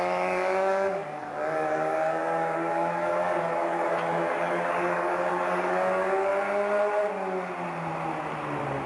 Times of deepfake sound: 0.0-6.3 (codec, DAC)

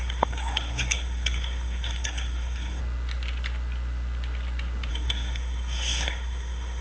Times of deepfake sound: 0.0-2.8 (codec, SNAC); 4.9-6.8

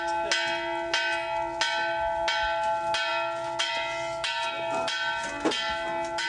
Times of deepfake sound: none

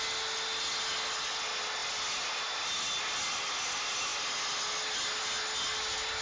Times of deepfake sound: none

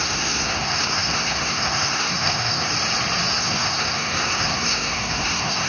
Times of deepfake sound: 0.0-2.7 (codec, SNAC); 3.4-5.7